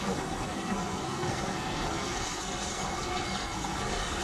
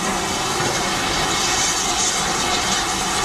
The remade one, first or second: first